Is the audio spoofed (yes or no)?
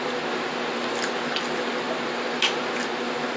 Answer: no